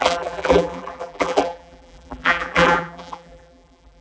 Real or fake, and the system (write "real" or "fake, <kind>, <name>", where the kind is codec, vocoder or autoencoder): fake, vocoder, BigVGAN v2